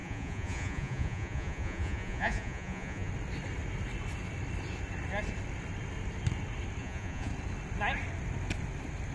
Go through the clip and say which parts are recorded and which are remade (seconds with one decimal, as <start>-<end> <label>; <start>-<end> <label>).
0.0-3.1 remade; 3.1-6.8 recorded; 6.8-7.3 remade; 7.3-9.1 recorded